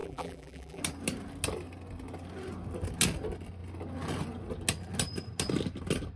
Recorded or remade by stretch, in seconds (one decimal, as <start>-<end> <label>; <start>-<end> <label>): 0.0-0.8 remade; 0.8-6.2 recorded